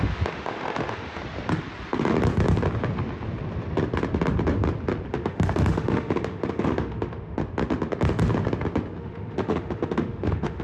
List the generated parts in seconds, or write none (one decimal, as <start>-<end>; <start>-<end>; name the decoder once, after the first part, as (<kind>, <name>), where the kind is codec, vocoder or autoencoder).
0.0-1.2 (autoencoder, DAC-VAE); 5.1-7.4; 9.0-10.6